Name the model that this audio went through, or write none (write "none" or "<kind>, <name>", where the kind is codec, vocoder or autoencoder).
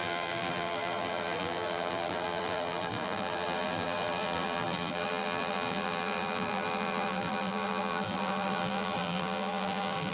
vocoder, BigVGAN v2